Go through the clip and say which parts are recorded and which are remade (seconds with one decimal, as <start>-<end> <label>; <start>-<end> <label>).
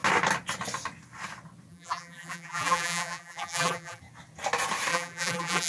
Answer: 0.0-1.7 recorded; 1.7-4.0 remade; 4.0-4.9 recorded; 4.9-5.7 remade